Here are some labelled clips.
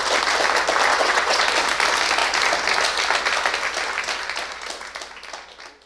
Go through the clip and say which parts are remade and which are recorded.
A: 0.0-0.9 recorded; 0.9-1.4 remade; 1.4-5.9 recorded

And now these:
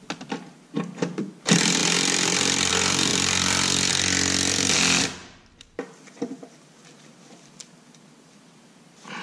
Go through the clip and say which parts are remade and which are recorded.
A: 0.0-1.8 recorded; 1.8-2.7 remade; 2.7-3.1 recorded; 3.1-3.9 remade; 3.9-5.2 recorded; 5.2-6.3 remade; 6.3-9.2 recorded

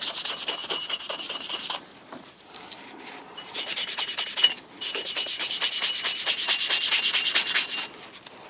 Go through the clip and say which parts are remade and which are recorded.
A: 0.0-0.6 recorded; 0.6-4.2 remade; 4.2-4.9 recorded; 4.9-5.7 remade; 5.7-8.5 recorded

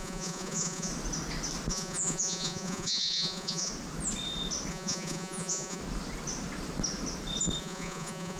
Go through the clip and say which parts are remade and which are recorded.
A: 0.0-0.9 remade; 0.9-1.7 recorded; 1.7-3.7 remade; 3.7-4.7 recorded; 4.7-5.8 remade; 5.8-7.6 recorded; 7.6-8.4 remade

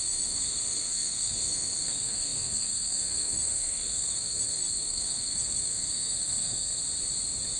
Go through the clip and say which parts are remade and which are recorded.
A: 0.0-6.8 remade; 6.8-7.6 recorded

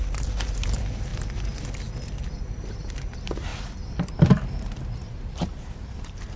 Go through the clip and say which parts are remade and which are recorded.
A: 0.0-1.1 remade; 1.1-2.4 recorded; 2.4-3.5 remade; 3.5-5.1 recorded; 5.1-6.4 remade

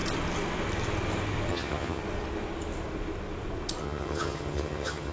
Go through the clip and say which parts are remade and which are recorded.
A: 0.0-1.5 recorded; 1.5-2.0 remade; 2.0-3.8 recorded; 3.8-5.1 remade